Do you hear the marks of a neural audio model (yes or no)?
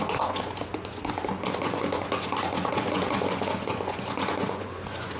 yes